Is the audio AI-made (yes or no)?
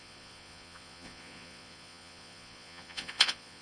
yes